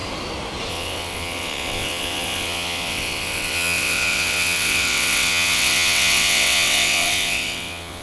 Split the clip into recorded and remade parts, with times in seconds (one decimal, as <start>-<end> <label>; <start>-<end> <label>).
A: 0.0-0.7 recorded; 0.7-8.0 remade